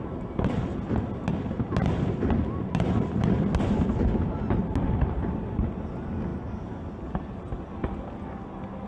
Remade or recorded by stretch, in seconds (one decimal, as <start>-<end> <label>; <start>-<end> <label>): 0.0-8.9 recorded